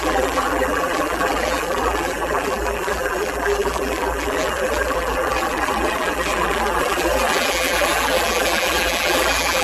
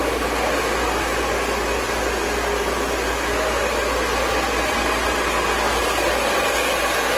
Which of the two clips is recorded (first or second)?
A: second